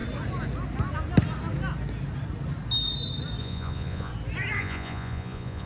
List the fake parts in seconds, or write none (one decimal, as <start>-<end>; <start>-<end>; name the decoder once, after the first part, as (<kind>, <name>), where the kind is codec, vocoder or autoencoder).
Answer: 3.4-4.1 (vocoder, Vocos); 4.6-5.7